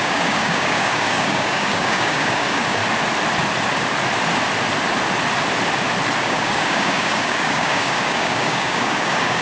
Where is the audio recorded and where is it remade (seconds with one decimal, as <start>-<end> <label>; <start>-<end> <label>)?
0.0-2.8 remade; 2.8-6.2 recorded; 6.2-9.4 remade

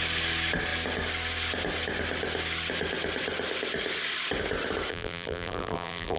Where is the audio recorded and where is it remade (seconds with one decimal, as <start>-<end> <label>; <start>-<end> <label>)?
0.0-4.9 recorded; 4.9-6.2 remade

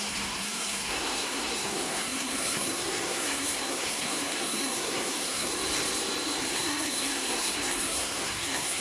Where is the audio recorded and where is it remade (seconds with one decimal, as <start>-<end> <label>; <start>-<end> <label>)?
0.0-5.5 remade; 5.5-6.5 recorded; 6.5-8.8 remade

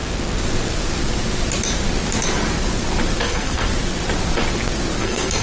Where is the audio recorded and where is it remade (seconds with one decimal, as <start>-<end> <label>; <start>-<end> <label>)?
0.0-3.2 recorded; 3.2-3.7 remade; 3.7-5.0 recorded; 5.0-5.4 remade

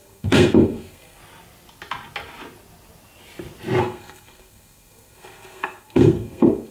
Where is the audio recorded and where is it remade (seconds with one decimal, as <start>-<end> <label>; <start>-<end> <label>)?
0.0-1.2 remade; 1.2-3.8 recorded; 3.8-6.7 remade